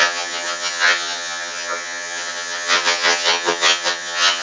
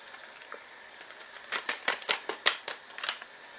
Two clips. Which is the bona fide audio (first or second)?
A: second